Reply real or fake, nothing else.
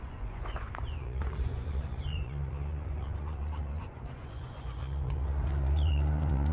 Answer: fake